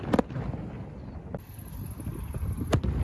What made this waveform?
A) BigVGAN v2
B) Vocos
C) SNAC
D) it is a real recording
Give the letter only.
D